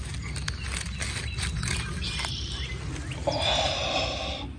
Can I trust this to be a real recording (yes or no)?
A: yes